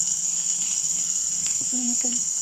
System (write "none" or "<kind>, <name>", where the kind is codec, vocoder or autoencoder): codec, SNAC